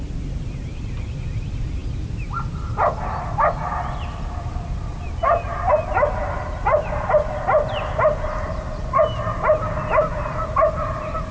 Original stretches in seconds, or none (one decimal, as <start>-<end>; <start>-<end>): 0.0-11.3